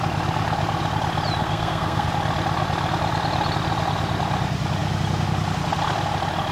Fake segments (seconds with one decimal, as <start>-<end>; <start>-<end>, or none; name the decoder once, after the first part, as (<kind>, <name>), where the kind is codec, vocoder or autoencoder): 1.4-2.1 (codec, SNAC)